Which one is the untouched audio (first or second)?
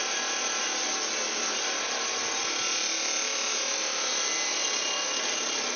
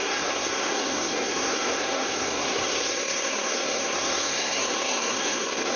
first